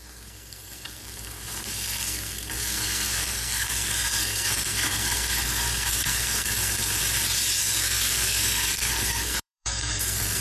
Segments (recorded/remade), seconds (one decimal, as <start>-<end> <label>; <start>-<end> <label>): 0.0-7.0 remade; 7.0-7.6 recorded; 7.6-10.4 remade